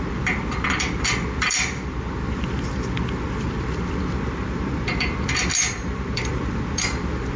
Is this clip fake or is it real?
fake